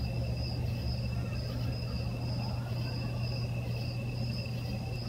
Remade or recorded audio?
recorded